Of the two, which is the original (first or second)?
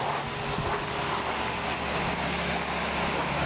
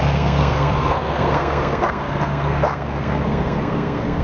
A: first